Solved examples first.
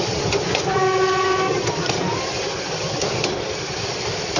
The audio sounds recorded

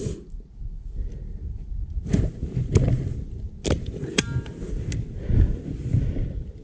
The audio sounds recorded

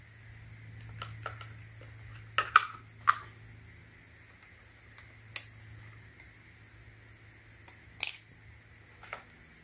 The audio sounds recorded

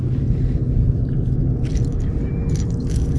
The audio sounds recorded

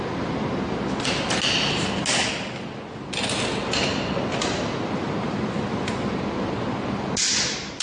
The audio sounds recorded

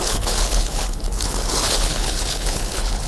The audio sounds remade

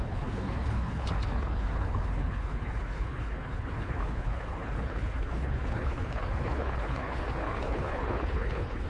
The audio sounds remade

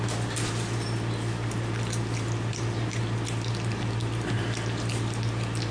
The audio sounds recorded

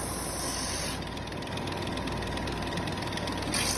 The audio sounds recorded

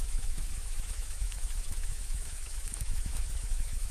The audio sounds remade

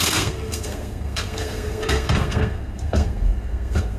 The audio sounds remade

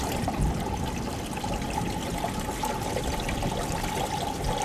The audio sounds recorded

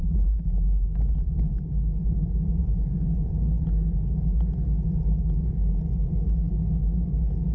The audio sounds recorded